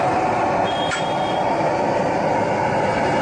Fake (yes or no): no